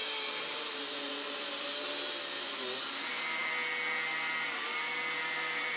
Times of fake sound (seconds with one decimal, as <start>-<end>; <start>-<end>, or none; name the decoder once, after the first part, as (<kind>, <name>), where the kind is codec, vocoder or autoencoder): none